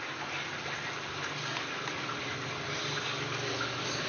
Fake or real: real